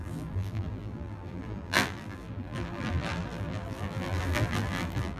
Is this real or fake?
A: fake